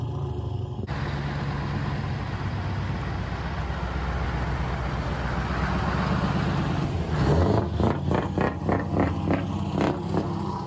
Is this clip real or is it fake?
real